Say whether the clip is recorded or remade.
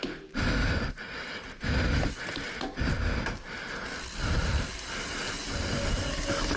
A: recorded